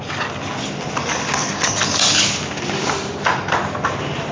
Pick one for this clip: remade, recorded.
recorded